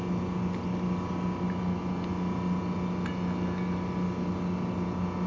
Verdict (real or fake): real